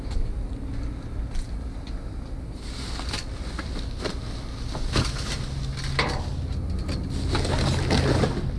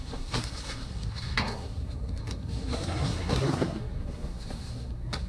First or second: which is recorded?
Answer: first